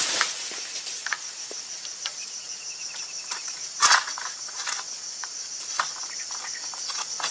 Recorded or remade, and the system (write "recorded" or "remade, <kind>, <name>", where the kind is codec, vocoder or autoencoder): remade, vocoder, Vocos